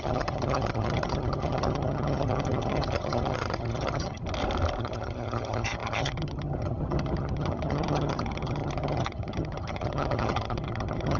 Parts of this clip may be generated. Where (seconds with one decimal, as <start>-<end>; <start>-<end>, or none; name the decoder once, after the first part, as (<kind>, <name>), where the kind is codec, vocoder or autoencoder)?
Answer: 0.0-4.2 (vocoder, HiFi-GAN); 4.8-11.2

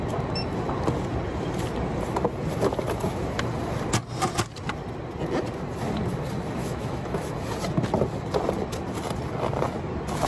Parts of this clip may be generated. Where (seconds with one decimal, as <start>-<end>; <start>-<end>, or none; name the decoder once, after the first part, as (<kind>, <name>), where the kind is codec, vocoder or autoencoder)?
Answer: 6.6-7.3 (autoencoder, DAC-VAE)